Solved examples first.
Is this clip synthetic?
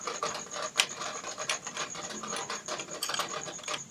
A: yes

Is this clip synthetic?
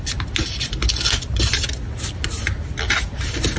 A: no